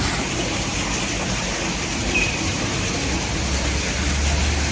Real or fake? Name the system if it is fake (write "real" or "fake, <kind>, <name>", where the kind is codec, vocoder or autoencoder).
real